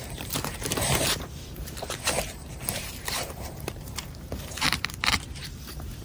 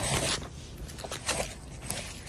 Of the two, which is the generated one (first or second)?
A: first